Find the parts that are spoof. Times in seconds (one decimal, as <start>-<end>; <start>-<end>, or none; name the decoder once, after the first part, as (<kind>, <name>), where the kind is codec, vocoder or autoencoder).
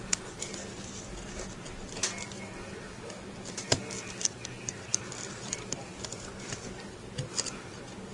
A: 4.9-6.7 (vocoder, BigVGAN v2)